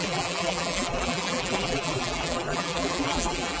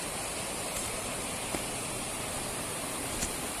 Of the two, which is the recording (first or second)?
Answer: second